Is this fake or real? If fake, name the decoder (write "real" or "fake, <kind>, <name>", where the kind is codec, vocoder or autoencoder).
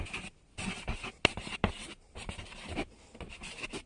real